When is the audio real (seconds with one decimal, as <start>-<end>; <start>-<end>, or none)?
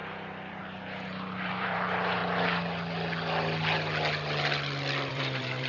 2.2-5.1